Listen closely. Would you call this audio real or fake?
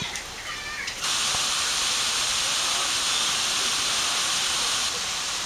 real